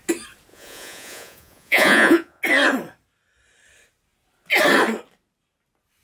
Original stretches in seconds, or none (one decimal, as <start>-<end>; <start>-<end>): 0.0-0.5; 2.4-6.0